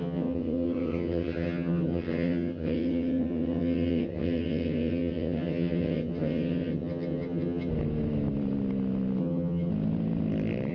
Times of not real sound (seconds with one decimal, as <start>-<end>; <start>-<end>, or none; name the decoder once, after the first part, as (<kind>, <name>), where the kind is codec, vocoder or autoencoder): 0.0-7.7 (vocoder, HiFi-GAN); 9.2-9.7